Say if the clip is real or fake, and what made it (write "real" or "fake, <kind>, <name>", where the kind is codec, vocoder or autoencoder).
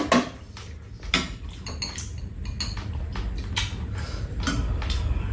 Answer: real